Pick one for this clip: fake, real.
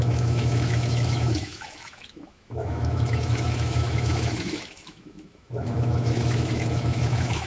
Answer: fake